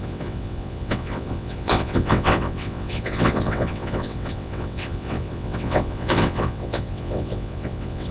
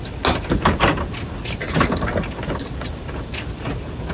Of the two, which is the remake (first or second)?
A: first